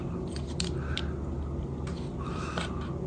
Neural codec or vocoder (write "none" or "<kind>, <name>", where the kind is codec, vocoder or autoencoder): none